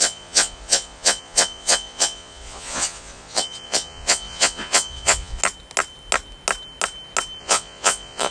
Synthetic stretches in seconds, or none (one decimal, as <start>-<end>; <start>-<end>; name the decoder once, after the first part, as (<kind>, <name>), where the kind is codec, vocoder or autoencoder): 0.0-5.4 (vocoder, Vocos); 7.4-8.3